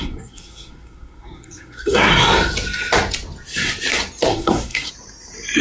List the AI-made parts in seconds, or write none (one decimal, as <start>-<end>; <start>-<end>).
0.0-2.1; 4.3-4.9